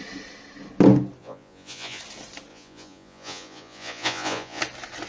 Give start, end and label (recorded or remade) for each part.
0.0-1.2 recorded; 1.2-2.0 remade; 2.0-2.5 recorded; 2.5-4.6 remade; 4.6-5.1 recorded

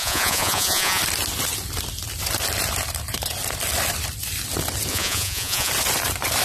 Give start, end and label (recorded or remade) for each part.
0.0-1.0 remade; 1.0-4.9 recorded; 4.9-5.7 remade; 5.7-6.4 recorded

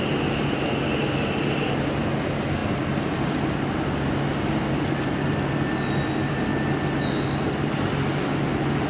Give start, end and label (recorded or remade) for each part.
0.0-8.9 recorded

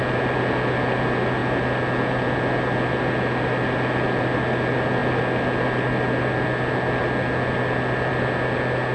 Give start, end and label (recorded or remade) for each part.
0.0-8.9 recorded

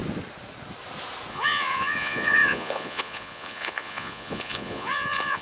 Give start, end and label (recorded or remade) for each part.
0.0-1.3 recorded; 1.3-5.4 remade

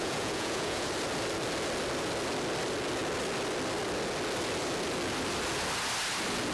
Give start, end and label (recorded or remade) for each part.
0.0-0.9 remade; 0.9-6.5 recorded

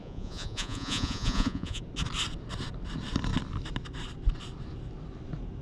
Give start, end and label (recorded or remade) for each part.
0.0-1.8 remade; 1.8-5.6 recorded